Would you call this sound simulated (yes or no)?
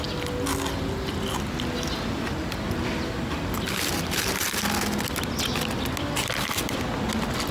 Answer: no